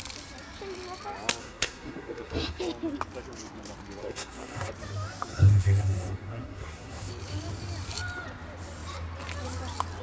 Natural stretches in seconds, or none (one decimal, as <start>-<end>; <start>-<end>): 0.0-1.4; 2.6-4.0; 4.7-5.3; 7.1-10.0